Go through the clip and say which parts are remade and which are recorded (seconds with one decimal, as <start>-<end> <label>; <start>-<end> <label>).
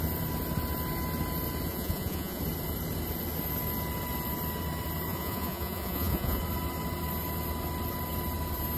0.0-1.7 recorded; 1.7-2.4 remade; 2.4-5.1 recorded; 5.1-6.4 remade; 6.4-8.8 recorded